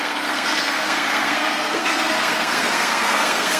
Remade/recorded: remade